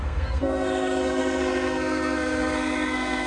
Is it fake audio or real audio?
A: fake